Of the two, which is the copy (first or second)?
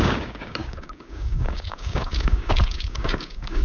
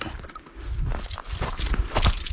first